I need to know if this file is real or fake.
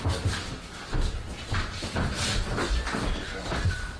real